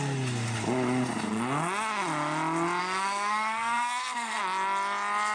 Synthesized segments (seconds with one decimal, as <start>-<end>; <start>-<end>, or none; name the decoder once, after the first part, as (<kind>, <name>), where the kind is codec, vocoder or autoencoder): 2.8-4.4 (codec, SNAC)